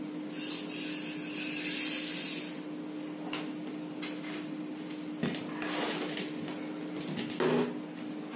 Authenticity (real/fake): real